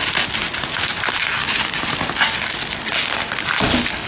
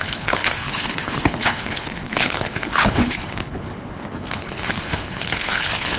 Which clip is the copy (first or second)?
second